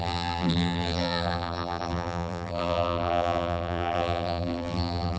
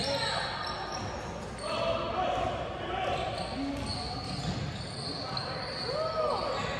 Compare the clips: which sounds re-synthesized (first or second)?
first